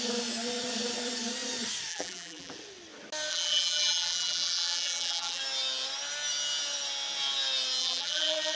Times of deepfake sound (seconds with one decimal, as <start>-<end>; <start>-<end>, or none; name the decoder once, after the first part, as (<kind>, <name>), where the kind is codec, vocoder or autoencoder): 1.9-2.5 (vocoder, BigVGAN v2); 3.3-5.4; 7.8-8.6